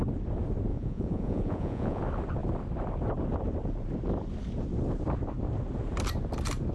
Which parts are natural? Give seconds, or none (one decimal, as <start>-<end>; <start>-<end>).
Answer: 0.0-0.7; 2.0-6.7